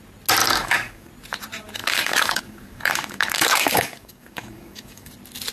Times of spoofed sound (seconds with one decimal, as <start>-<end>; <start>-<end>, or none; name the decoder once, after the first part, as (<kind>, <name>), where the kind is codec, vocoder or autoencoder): 0.4-1.1 (codec, DAC); 1.8-5.1